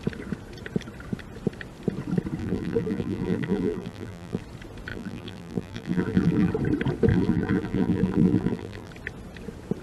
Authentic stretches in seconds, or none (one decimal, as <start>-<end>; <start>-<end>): 0.0-2.4; 4.4-4.9; 6.5-7.1; 8.9-9.8